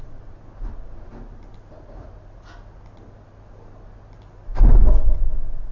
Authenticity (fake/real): real